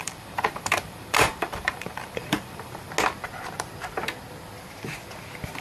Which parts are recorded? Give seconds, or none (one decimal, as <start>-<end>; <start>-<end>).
2.9-5.6

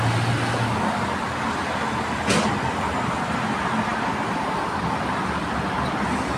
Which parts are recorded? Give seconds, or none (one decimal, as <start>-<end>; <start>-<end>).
0.0-6.4

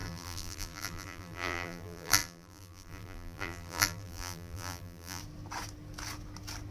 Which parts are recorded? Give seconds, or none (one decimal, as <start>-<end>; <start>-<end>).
5.2-6.7